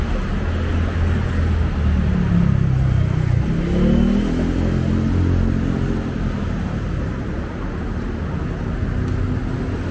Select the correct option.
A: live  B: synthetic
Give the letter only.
A